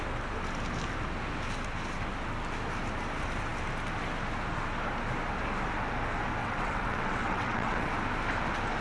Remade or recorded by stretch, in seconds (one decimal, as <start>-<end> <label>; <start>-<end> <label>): 0.0-6.4 recorded; 6.4-7.9 remade; 7.9-8.8 recorded